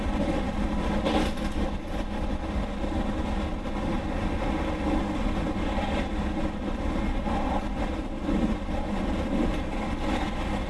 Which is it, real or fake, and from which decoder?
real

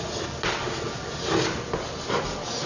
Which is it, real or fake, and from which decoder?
real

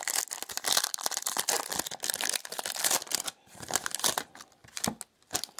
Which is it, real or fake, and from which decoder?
real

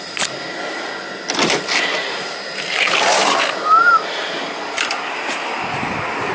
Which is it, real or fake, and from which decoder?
real